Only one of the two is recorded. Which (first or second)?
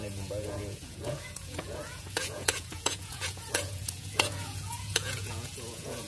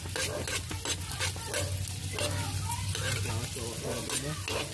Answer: second